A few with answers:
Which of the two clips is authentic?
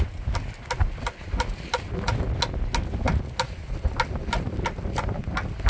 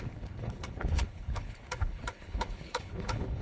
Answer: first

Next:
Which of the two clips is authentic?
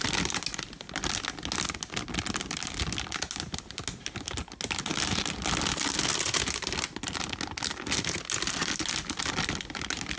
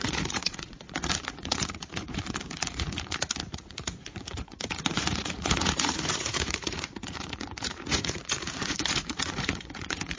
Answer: first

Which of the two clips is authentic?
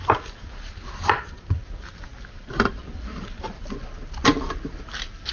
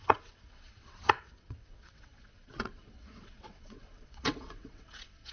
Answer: first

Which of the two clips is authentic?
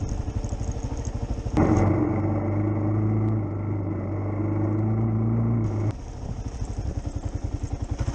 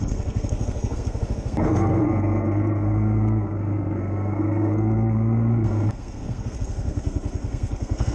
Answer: first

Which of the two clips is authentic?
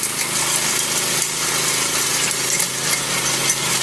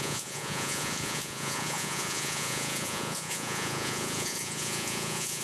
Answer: first